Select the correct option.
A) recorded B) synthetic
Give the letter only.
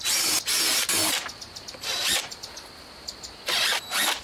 A